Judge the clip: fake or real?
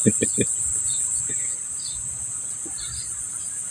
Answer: real